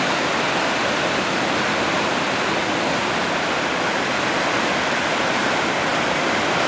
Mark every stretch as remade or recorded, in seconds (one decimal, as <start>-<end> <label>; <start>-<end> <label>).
0.0-2.6 remade; 2.6-5.4 recorded; 5.4-6.7 remade